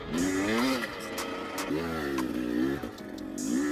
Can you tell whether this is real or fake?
real